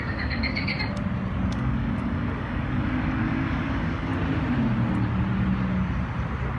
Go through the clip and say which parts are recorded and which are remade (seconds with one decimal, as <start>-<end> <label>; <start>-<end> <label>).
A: 0.0-0.7 remade; 0.7-1.5 recorded; 1.5-4.1 remade; 4.1-6.6 recorded